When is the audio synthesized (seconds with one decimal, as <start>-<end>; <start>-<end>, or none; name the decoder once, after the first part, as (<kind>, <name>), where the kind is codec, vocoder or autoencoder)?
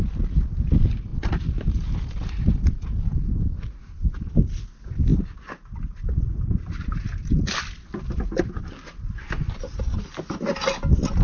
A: none